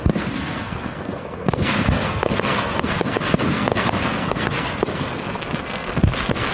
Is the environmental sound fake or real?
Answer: fake